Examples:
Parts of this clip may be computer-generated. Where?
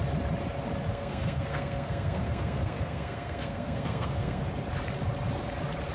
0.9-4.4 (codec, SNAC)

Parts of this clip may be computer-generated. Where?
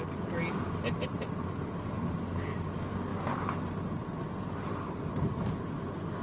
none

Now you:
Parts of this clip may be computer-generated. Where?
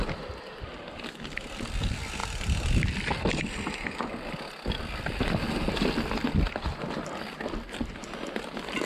none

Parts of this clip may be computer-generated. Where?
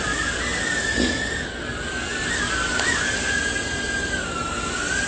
none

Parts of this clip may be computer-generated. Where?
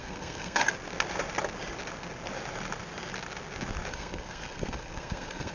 0.0-0.6 (codec, SNAC); 3.9-5.5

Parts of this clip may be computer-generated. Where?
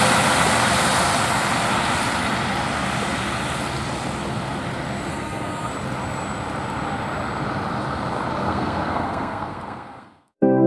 5.1-5.7 (codec, SNAC); 8.4-10.7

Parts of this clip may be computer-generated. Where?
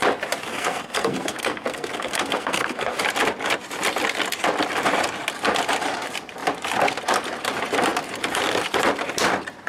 0.5-3.0 (codec, SNAC)